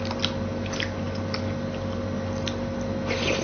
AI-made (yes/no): no